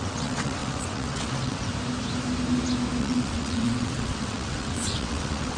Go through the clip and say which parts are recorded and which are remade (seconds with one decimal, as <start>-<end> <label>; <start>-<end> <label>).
0.0-1.7 remade; 1.7-3.0 recorded; 3.0-5.6 remade